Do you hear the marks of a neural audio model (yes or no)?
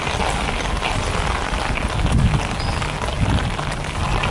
no